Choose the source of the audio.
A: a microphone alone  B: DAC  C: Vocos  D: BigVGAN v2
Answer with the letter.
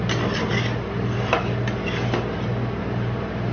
A